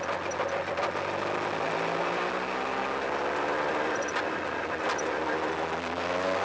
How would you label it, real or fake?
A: real